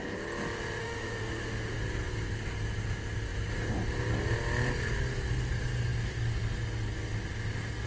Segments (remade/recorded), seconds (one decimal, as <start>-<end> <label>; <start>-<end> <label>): 0.0-0.8 recorded; 0.8-1.8 remade; 1.8-7.9 recorded